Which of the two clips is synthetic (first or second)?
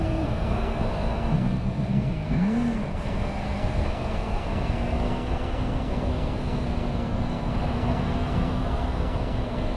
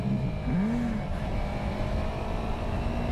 first